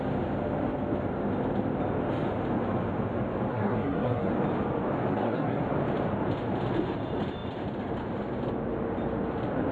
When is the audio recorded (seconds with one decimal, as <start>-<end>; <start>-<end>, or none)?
0.0-3.5; 4.3-5.1; 5.6-9.7